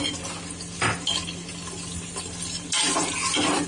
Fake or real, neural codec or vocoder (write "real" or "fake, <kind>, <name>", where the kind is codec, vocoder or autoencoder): real